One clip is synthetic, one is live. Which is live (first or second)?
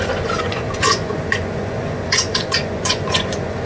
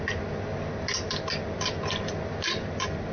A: second